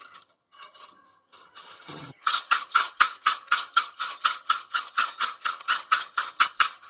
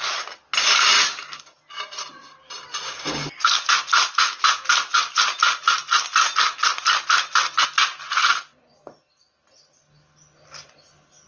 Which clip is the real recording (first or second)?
second